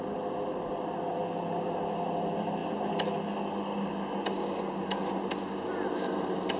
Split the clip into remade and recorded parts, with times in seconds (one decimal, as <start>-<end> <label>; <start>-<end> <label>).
0.0-6.6 recorded